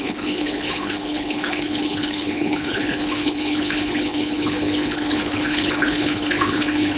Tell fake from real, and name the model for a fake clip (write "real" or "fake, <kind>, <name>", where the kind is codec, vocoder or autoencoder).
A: fake, codec, HILCodec